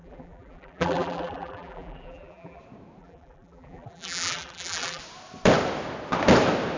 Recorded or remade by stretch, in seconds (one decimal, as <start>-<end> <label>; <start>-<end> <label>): 0.0-2.6 remade; 2.6-3.0 recorded; 3.0-5.0 remade; 5.0-6.8 recorded